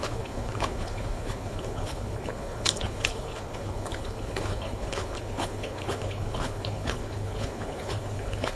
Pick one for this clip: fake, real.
fake